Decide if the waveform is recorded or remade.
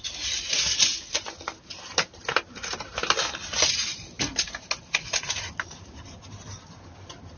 recorded